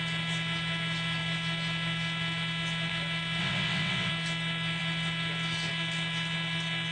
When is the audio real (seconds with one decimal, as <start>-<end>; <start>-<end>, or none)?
0.0-3.4; 4.1-6.9